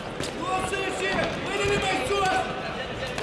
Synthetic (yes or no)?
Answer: no